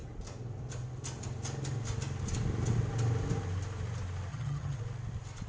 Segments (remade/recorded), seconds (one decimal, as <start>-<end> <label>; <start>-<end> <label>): 0.0-4.3 recorded; 4.3-4.8 remade; 4.8-5.5 recorded